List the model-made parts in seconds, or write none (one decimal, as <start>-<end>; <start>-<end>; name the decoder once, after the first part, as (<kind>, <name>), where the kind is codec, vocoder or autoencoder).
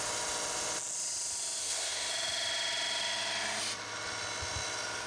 1.6-2.1 (codec, SNAC)